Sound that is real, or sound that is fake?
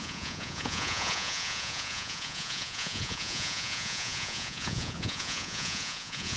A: fake